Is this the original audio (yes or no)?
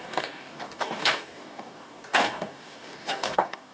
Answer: no